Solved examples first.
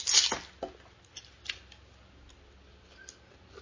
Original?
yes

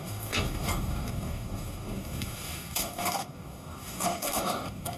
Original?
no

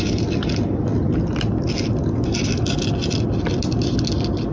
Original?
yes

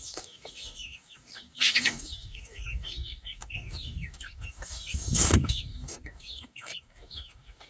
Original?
no